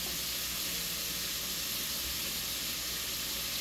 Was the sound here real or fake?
real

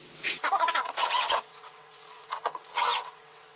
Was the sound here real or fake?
fake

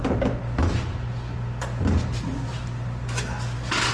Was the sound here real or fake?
real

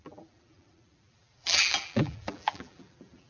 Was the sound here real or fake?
fake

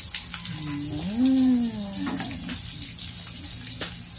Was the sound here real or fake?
real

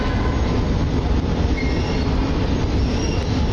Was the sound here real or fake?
real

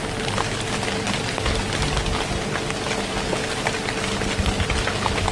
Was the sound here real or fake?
real